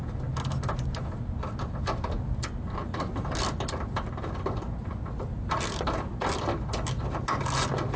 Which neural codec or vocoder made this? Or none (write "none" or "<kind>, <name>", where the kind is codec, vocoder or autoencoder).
none